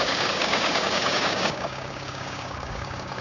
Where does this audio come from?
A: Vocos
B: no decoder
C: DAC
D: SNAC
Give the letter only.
C